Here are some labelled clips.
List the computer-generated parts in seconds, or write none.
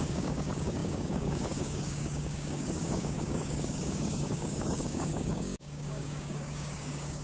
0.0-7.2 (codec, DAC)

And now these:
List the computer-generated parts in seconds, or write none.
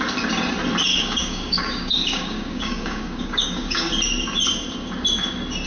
0.9-3.9 (codec, DAC)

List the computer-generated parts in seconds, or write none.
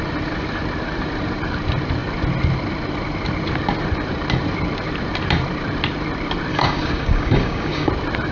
6.5-7.9 (codec, DAC)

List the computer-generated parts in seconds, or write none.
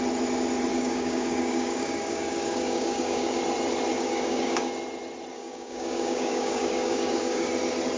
0.7-3.4 (codec, DAC); 3.9-4.7; 5.3-7.5